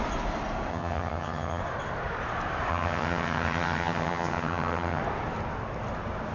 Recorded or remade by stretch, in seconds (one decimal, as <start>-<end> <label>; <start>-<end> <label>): 0.0-0.7 recorded; 0.7-1.6 remade; 1.6-2.7 recorded; 2.7-5.0 remade; 5.0-6.3 recorded